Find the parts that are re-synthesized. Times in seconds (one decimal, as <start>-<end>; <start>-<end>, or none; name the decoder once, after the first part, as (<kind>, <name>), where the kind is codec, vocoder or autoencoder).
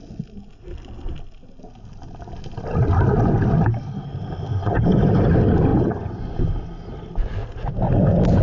5.7-6.4 (vocoder, Vocos)